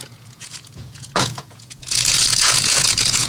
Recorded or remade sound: remade